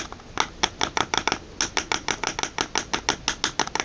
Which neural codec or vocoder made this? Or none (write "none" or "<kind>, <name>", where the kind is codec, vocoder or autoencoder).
none